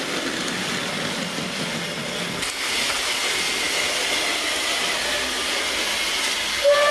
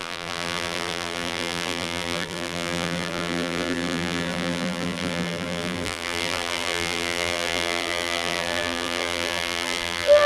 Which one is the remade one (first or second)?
second